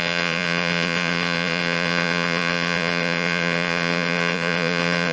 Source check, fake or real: fake